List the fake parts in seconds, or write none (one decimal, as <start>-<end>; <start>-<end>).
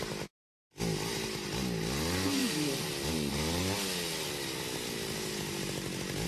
none